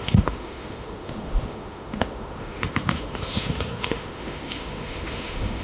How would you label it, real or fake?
fake